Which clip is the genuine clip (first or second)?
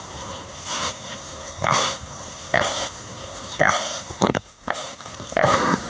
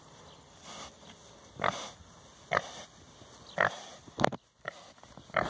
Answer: second